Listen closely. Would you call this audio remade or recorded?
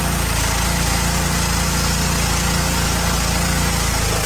recorded